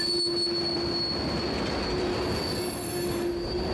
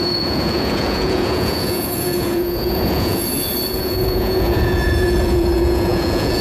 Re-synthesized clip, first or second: second